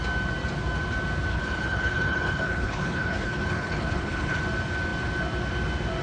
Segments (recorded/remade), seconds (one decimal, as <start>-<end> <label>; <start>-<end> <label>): 0.0-1.3 recorded; 1.3-4.4 remade; 4.4-6.0 recorded